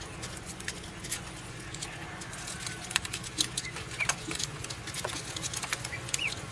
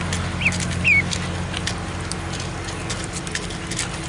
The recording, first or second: second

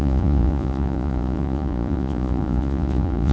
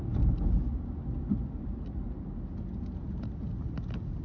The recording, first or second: second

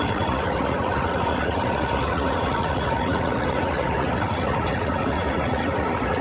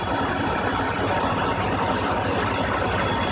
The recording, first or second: second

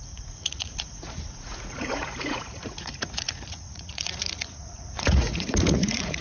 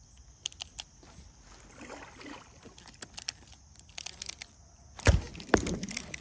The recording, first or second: second